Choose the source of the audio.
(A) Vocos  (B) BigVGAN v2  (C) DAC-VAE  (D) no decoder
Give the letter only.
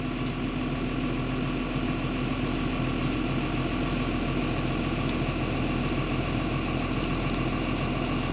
D